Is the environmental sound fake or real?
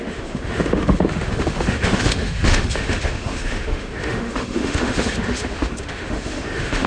fake